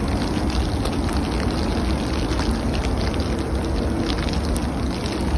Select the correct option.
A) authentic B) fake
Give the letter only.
A